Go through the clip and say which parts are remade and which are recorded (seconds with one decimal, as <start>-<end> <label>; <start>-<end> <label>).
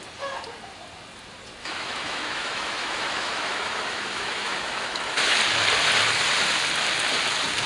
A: 0.0-1.6 recorded; 1.6-5.4 remade; 5.4-7.7 recorded